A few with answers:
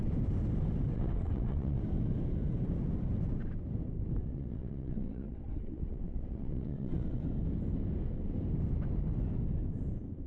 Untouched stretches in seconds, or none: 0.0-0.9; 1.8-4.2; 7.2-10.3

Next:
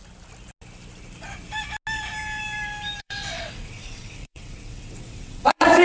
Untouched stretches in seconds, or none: 0.0-3.0

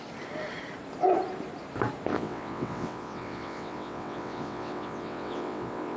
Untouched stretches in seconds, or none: 0.0-2.1

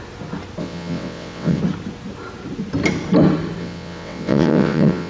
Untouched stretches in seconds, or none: 0.0-0.6; 1.6-3.6

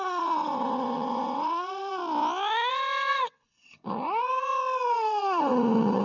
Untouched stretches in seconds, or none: 2.0-2.7

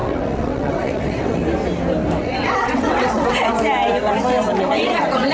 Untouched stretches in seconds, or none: 1.4-2.2; 3.5-4.6

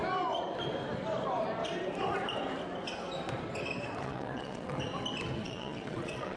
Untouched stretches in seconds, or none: 0.0-4.0; 4.8-5.4